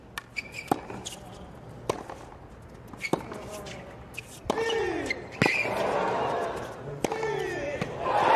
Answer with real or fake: real